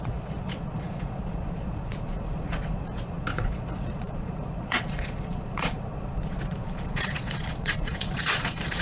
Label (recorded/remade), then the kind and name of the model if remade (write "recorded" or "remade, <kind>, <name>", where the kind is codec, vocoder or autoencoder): remade, vocoder, Vocos